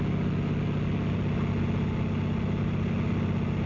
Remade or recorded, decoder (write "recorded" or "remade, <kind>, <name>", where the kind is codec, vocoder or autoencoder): recorded